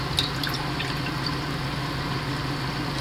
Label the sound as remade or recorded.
recorded